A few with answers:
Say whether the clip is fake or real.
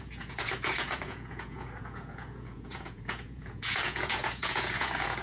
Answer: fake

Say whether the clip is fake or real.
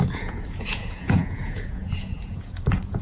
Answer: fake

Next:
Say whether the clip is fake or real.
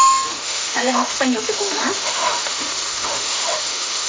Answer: fake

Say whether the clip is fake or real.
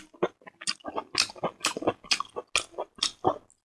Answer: real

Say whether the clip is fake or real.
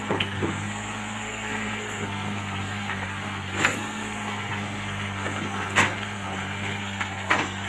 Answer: fake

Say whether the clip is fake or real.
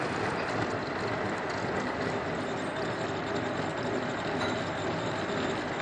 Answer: real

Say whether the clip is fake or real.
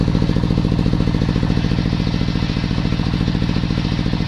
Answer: real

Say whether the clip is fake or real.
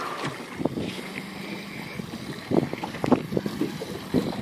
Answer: real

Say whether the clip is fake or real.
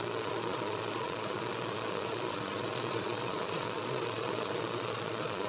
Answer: fake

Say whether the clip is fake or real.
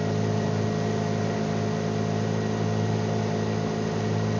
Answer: real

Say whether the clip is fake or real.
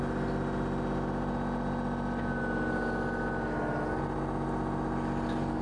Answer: real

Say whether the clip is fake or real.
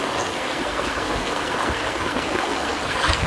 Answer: fake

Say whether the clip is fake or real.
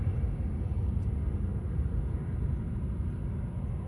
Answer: real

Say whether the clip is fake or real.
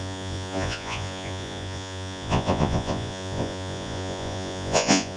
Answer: fake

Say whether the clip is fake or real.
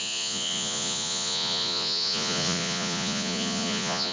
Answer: fake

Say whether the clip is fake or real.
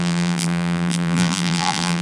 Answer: fake